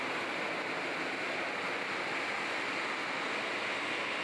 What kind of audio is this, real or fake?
real